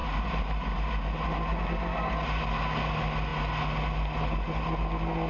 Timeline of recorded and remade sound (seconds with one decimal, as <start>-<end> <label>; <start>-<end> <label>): 0.0-5.3 recorded